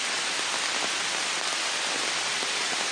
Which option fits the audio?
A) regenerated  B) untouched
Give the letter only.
B